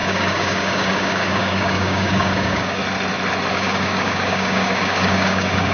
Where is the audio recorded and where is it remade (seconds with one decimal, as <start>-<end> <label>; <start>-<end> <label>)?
0.0-2.8 remade; 2.8-3.5 recorded; 3.5-5.7 remade

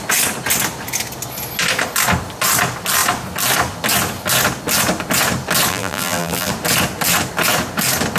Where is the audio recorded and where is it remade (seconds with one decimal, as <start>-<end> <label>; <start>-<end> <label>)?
0.0-5.7 recorded; 5.7-6.5 remade; 6.5-8.2 recorded

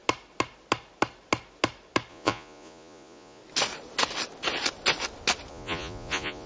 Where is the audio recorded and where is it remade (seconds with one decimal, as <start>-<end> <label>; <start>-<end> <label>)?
0.0-2.1 recorded; 2.1-3.4 remade; 3.4-5.5 recorded; 5.5-6.5 remade

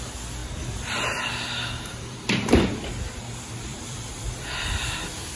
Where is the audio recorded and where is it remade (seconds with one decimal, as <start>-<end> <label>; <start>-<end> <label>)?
0.0-0.4 recorded; 0.4-1.3 remade; 1.3-1.9 recorded; 1.9-2.7 remade; 2.7-3.7 recorded; 3.7-5.4 remade

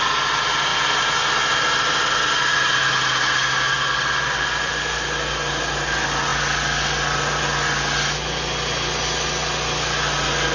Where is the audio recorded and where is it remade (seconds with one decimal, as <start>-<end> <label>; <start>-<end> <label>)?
0.0-10.5 recorded

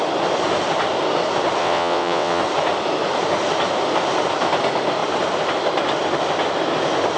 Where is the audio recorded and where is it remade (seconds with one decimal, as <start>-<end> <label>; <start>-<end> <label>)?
0.0-1.6 recorded; 1.6-2.4 remade; 2.4-7.2 recorded